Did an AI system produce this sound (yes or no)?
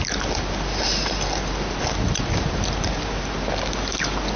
no